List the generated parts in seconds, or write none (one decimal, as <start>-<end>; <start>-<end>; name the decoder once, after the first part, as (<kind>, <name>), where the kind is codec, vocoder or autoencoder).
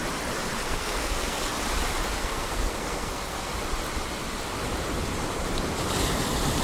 0.5-1.5 (codec, SNAC); 2.2-3.5